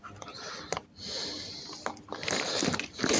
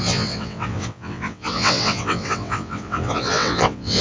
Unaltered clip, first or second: first